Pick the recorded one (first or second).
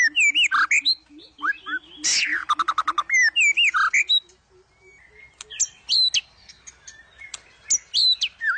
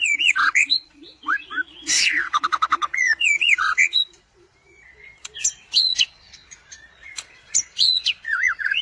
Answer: first